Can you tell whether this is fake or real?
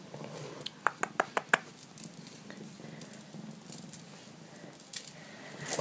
real